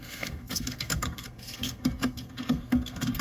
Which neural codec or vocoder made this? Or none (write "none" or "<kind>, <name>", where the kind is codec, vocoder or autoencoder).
codec, SNAC